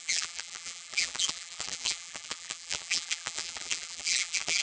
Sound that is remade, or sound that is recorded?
remade